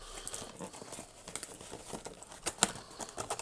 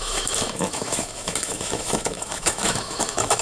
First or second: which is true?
first